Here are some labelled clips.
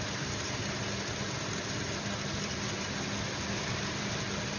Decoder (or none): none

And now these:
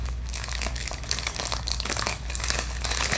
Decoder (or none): codec, DAC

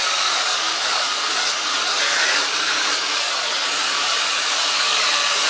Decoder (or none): codec, DAC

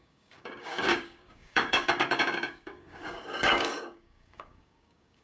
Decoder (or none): codec, DAC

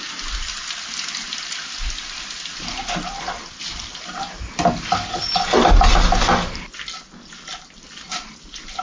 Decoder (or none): none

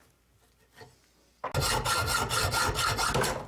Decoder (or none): none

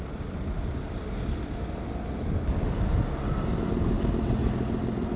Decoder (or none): none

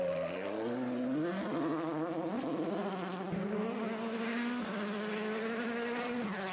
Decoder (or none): none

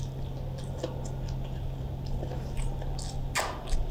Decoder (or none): none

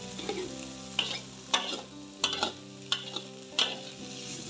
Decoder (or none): none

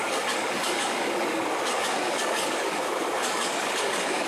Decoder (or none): codec, DAC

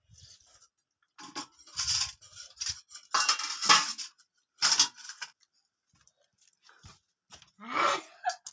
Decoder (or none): none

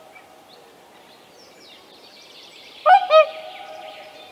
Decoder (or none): none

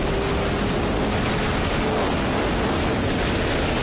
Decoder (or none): none